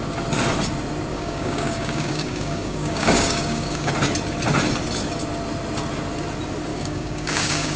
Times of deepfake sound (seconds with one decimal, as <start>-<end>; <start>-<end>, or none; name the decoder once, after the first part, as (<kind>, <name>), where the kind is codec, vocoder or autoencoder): 1.1-3.9 (codec, DAC); 6.7-7.8